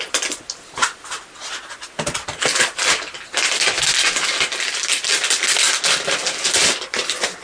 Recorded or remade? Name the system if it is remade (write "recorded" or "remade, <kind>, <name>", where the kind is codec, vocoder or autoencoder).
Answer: recorded